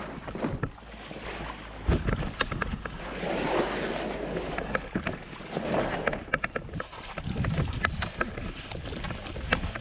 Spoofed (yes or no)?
no